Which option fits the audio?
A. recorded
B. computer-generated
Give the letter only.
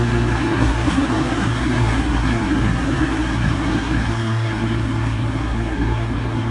B